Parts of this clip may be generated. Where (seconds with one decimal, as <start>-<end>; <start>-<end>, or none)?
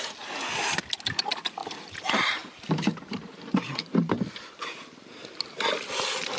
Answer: 1.6-5.4